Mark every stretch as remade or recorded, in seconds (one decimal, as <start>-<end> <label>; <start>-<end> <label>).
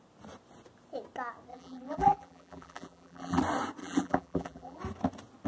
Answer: 0.0-1.5 recorded; 1.5-3.4 remade; 3.4-3.8 recorded; 3.8-4.8 remade; 4.8-5.5 recorded